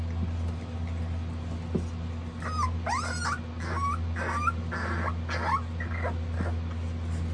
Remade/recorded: recorded